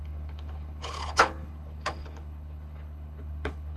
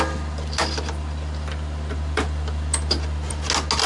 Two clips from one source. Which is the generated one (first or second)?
first